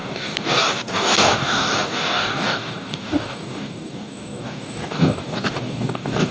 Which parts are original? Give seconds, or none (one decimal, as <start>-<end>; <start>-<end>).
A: none